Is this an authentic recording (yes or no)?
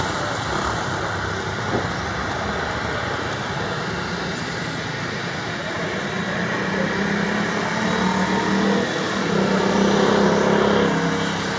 yes